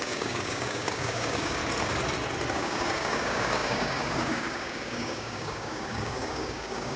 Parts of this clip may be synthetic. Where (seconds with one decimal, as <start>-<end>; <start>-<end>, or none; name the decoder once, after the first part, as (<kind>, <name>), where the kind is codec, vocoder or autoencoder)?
0.0-1.6 (codec, DAC); 2.5-7.0